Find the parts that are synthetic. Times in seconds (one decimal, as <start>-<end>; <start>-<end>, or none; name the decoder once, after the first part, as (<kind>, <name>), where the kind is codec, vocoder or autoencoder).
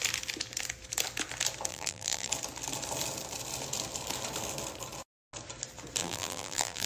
1.7-2.3 (vocoder, BigVGAN v2); 6.0-6.9